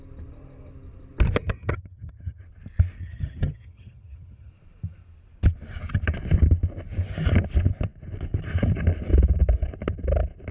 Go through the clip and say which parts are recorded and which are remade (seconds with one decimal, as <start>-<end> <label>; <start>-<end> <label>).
0.0-1.4 recorded; 1.4-2.4 remade; 2.4-3.0 recorded; 3.0-4.5 remade; 4.5-10.5 recorded